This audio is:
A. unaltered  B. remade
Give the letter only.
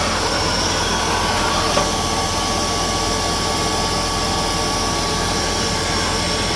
A